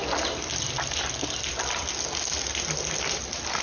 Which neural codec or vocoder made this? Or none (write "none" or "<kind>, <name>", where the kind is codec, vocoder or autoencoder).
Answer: none